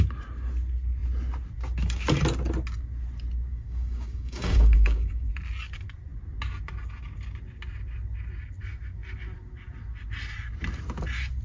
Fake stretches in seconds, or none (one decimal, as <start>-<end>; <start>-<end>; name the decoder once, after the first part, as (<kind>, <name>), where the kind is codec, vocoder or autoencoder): 3.5-5.3 (codec, DAC)